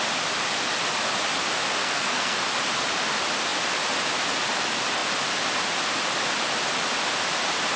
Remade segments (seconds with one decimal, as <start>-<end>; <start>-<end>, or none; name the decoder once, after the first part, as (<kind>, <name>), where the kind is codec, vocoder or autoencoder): 1.8-2.4 (codec, SNAC)